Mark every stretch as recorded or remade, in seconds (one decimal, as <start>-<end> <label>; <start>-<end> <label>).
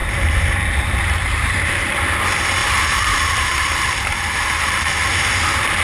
0.0-1.9 remade; 1.9-2.6 recorded; 2.6-5.3 remade; 5.3-5.8 recorded